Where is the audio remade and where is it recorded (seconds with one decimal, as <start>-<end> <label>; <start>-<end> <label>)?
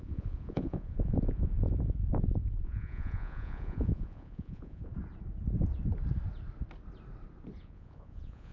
0.0-4.9 remade; 4.9-7.6 recorded; 7.6-8.5 remade